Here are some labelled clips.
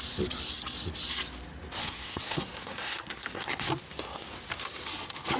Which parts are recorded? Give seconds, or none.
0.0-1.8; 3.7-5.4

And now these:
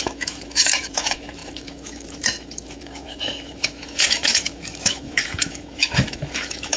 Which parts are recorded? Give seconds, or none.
none

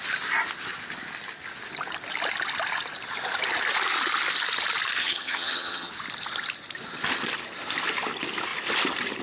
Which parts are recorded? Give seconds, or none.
0.0-5.0; 5.9-9.2

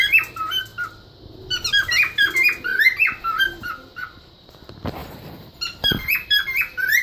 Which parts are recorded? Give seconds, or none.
0.0-5.0; 6.6-7.0

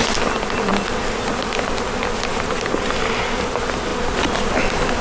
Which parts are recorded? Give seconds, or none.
0.0-5.0

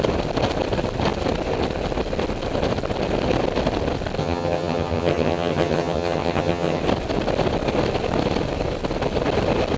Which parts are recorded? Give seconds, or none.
0.0-4.2; 6.8-9.8